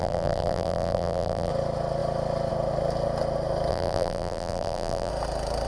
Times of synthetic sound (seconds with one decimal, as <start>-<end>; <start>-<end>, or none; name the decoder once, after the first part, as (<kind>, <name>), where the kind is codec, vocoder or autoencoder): 0.0-1.5 (vocoder, BigVGAN v2); 3.7-5.1